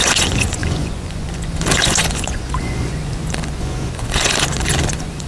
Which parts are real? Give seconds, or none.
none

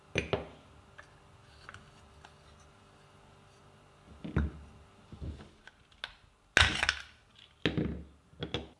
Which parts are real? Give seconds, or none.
0.0-8.8